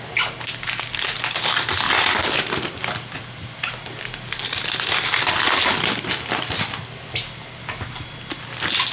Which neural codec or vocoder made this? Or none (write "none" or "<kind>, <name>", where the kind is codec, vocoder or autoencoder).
none